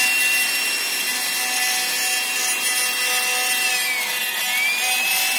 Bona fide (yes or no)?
yes